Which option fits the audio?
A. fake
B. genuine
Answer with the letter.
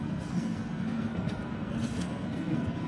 A